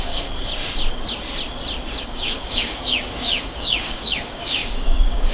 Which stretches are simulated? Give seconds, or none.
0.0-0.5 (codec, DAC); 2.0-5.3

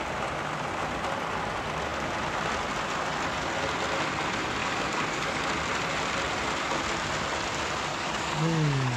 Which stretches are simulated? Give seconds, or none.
4.6-5.4 (codec, DAC); 7.9-9.0

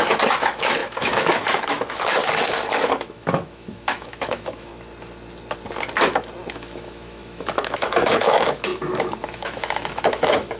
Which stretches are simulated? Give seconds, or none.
0.0-2.2 (autoencoder, DAC-VAE); 2.7-4.7; 6.5-10.6

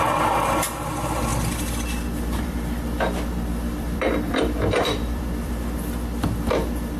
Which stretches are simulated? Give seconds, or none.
1.3-5.5 (vocoder, BigVGAN v2)

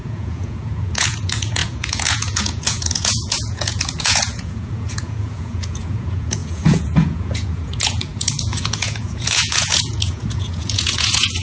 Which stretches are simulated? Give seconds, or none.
0.0-11.4 (vocoder, Vocos)